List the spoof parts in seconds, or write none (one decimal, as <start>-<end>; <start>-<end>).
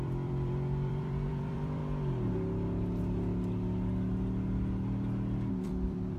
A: 0.0-1.8; 5.5-6.2